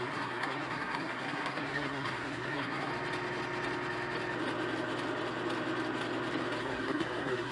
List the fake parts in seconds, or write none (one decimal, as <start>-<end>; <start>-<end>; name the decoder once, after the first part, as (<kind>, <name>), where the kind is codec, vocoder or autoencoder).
0.0-2.9 (codec, SNAC); 6.6-7.5